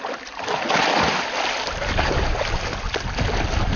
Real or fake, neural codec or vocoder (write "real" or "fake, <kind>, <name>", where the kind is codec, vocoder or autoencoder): real